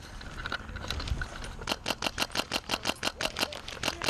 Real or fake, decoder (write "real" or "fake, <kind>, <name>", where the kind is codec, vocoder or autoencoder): real